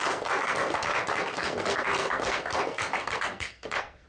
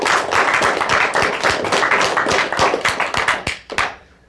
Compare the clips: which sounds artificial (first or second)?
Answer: first